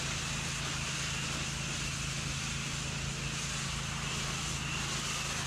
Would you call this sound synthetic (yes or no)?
no